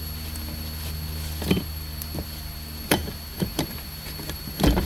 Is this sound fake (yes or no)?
yes